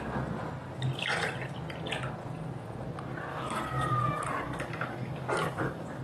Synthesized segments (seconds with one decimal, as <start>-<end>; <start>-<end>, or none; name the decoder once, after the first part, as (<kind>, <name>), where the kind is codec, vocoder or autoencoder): 3.3-6.0 (codec, DAC)